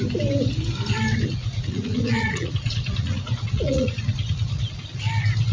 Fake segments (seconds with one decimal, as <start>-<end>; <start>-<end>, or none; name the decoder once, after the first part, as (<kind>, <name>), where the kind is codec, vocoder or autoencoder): 1.4-4.7 (vocoder, Vocos)